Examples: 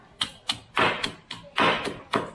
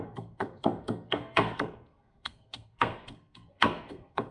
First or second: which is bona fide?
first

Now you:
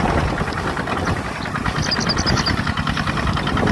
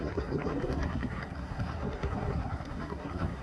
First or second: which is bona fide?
first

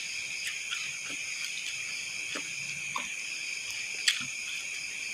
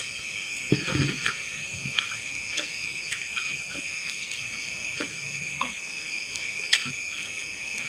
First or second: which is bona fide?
first